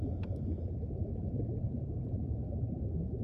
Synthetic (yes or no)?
no